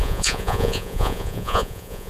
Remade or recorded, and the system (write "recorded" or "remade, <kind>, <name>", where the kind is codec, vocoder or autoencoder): remade, vocoder, Vocos